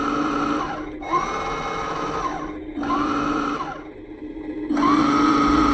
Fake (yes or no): no